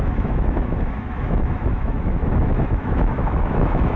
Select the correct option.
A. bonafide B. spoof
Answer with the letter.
B